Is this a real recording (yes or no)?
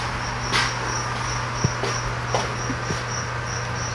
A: yes